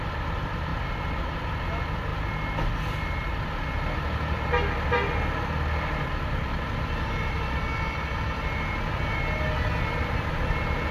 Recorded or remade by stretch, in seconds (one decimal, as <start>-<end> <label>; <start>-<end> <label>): 0.0-10.9 recorded